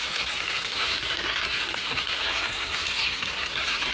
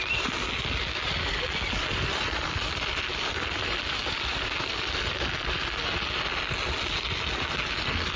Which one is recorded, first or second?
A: second